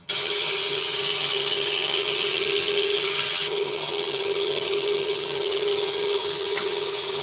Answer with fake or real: fake